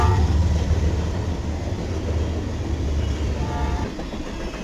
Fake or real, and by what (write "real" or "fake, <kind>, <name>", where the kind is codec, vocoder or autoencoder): real